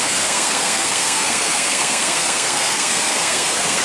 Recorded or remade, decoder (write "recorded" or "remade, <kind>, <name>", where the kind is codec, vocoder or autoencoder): remade, codec, SNAC